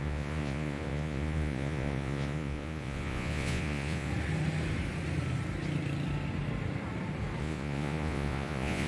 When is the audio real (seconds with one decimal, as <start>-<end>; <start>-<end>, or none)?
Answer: 4.1-7.4